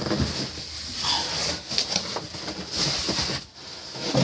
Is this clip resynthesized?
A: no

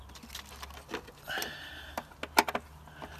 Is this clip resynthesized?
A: no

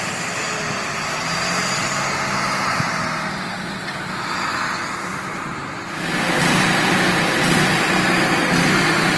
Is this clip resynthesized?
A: no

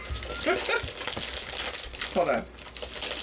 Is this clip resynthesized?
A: no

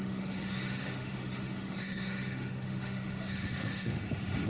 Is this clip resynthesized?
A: yes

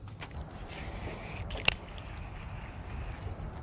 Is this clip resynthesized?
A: no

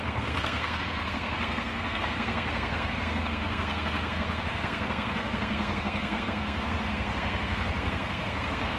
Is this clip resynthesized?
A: yes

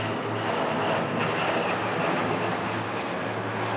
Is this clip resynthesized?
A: no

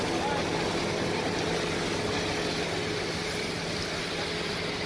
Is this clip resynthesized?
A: no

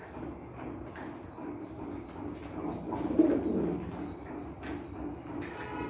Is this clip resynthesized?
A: no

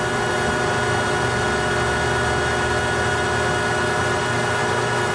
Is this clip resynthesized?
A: no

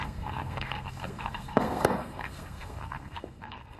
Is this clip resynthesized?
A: yes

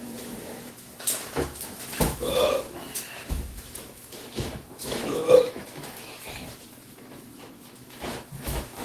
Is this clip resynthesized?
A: yes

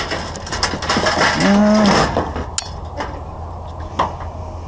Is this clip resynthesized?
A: no